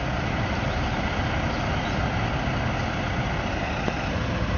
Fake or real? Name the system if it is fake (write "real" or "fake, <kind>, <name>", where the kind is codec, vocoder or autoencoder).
real